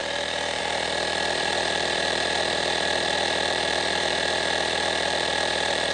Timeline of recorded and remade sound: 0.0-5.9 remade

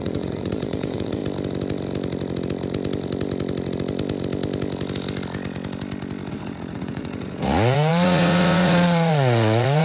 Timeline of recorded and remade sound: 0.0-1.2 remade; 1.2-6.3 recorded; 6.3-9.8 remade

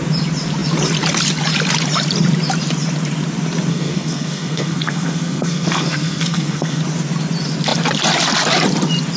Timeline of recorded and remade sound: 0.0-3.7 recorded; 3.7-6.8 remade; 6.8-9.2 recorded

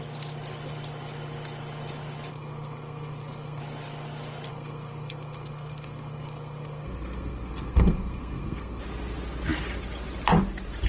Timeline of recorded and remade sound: 0.0-2.3 recorded; 2.3-3.6 remade; 3.6-4.5 recorded; 4.5-8.8 remade; 8.8-10.9 recorded

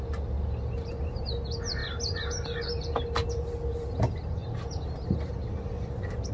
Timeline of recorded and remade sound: 0.0-6.3 recorded

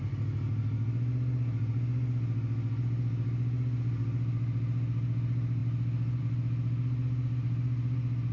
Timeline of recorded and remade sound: 0.0-8.3 recorded

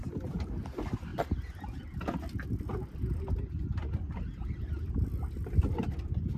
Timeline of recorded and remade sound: 0.0-6.4 recorded